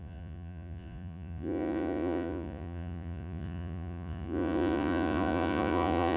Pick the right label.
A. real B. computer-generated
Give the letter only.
B